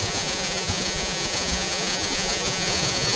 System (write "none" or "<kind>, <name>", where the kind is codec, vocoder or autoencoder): vocoder, Vocos